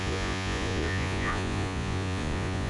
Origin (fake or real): fake